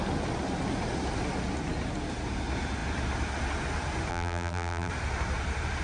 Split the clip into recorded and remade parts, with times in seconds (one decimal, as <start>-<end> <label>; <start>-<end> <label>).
0.0-4.1 recorded; 4.1-4.9 remade; 4.9-5.8 recorded